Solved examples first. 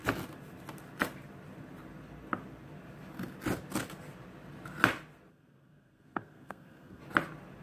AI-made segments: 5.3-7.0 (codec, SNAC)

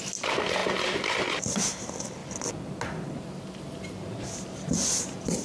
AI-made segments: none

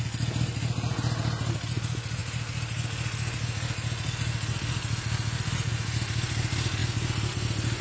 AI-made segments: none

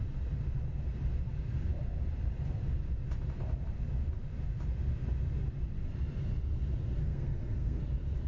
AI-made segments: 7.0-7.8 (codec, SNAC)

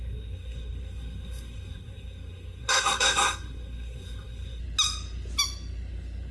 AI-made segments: 0.0-4.6 (codec, SNAC)

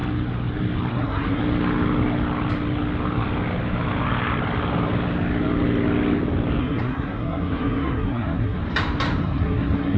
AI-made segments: 0.9-1.4 (codec, SNAC); 6.6-8.6; 9.2-10.0

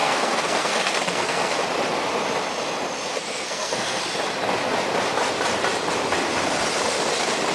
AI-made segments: 0.0-1.6 (codec, SNAC); 3.1-4.0